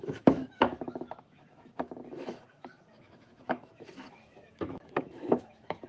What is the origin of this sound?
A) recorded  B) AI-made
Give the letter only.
B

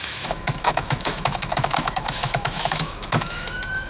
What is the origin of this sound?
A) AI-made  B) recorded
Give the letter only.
A